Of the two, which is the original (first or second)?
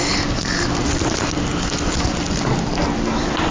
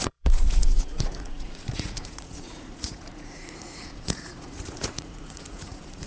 first